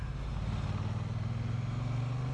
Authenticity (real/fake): real